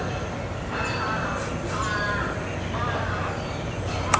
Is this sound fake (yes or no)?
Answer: no